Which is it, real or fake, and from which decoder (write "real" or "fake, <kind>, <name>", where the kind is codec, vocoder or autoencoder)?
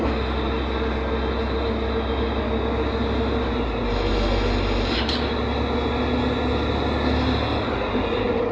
real